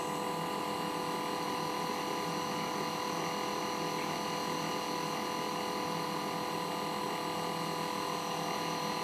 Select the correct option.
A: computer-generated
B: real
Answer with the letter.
B